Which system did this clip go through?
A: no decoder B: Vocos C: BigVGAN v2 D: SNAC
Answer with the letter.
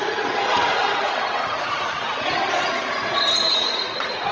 B